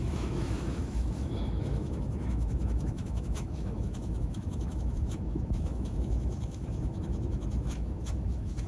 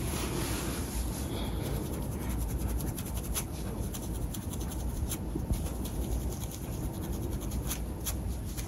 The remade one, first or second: first